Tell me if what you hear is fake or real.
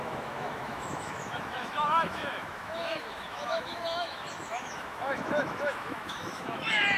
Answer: fake